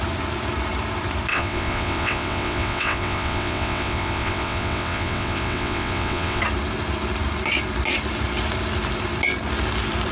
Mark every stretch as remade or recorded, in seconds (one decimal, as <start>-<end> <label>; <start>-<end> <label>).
0.0-1.3 recorded; 1.3-6.4 remade; 6.4-10.1 recorded